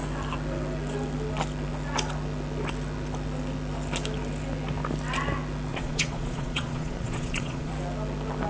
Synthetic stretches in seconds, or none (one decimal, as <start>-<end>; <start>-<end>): 5.7-7.7